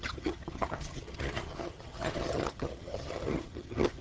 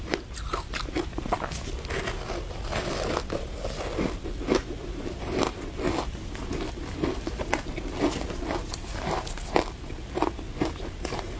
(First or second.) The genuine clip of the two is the second